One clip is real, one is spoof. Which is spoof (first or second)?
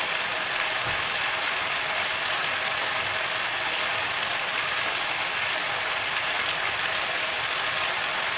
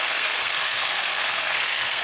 second